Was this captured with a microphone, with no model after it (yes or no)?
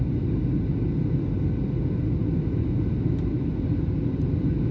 yes